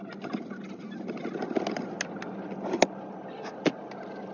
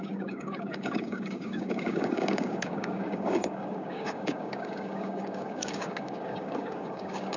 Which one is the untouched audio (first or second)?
first